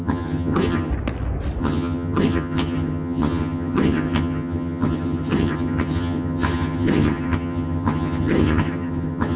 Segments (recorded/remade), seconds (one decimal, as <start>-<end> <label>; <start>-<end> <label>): 0.0-0.9 remade; 0.9-1.6 recorded; 1.6-9.4 remade